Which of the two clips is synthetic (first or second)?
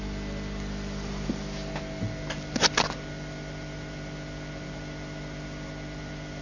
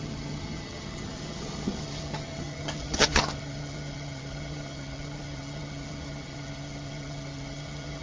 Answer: second